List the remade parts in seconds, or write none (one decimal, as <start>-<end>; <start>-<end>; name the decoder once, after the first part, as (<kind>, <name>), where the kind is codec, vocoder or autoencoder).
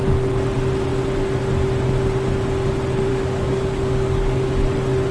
3.1-4.5 (codec, DAC)